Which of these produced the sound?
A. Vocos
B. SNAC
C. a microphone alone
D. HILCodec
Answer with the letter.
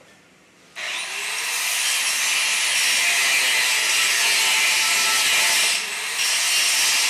C